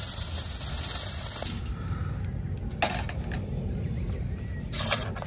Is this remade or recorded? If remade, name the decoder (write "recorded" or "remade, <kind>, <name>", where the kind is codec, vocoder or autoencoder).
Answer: recorded